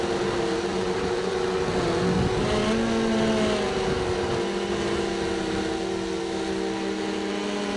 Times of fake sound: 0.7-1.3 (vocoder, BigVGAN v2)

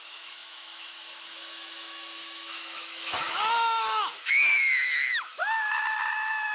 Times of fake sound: 0.0-5.4 (autoencoder, DAC-VAE); 6.1-6.5

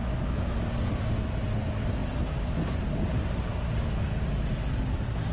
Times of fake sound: none

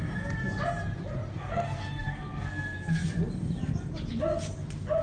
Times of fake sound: 1.3-3.1 (codec, SNAC)

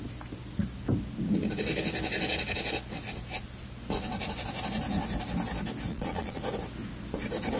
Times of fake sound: 5.9-6.4 (vocoder, Vocos)